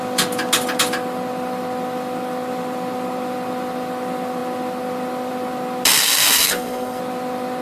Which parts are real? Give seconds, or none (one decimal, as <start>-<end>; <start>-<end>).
0.0-6.2; 7.0-7.6